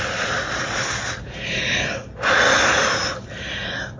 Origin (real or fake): real